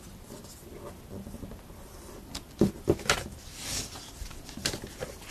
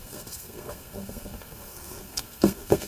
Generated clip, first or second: second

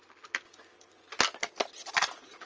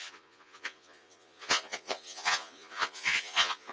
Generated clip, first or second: second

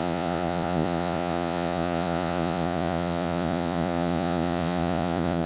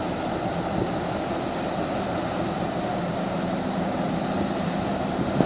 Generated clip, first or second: first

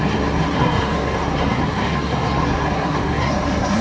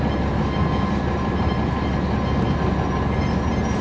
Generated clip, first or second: first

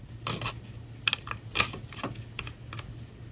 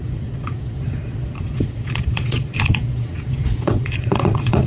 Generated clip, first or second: second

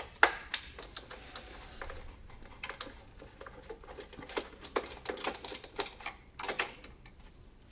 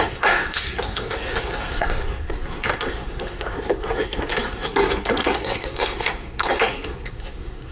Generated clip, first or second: second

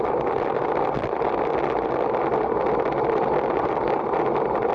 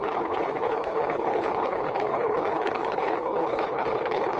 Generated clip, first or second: second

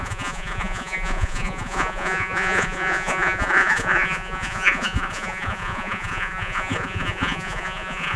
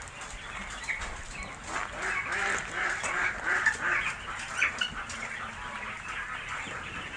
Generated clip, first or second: first